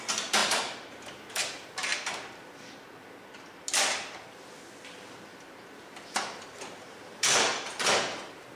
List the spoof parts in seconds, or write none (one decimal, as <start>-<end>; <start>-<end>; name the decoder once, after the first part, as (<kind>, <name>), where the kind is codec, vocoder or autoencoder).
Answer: 0.0-1.9 (vocoder, BigVGAN v2); 5.0-8.6

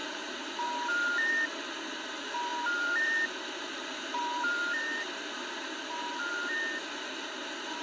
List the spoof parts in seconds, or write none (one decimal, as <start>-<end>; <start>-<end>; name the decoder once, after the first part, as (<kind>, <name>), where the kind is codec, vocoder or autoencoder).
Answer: 2.5-5.9 (vocoder, BigVGAN v2)

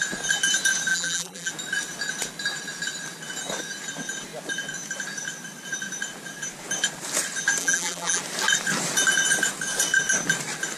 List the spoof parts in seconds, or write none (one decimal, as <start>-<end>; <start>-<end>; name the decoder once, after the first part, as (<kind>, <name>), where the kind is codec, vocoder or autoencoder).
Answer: 0.9-1.5 (vocoder, BigVGAN v2); 7.6-8.2

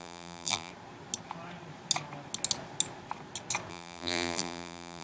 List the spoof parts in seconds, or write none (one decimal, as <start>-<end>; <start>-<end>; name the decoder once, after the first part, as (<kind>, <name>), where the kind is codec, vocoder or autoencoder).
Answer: 0.0-0.7 (vocoder, BigVGAN v2); 3.7-5.0

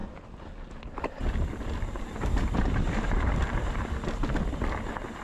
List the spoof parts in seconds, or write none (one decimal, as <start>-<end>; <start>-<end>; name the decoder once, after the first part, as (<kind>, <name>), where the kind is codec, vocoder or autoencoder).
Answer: 1.2-3.7 (vocoder, BigVGAN v2)

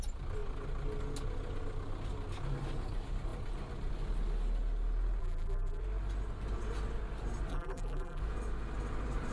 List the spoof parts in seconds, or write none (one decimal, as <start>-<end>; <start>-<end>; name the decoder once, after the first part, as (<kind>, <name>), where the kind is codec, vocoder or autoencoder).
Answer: 5.2-5.8 (vocoder, BigVGAN v2); 7.5-8.2